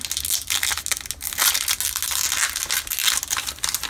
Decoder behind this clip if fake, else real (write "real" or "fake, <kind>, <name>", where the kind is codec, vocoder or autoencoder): real